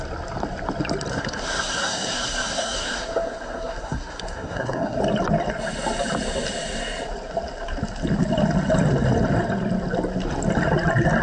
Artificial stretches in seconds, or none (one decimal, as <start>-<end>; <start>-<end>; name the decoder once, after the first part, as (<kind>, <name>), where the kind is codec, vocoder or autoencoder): 1.1-5.0 (codec, SNAC)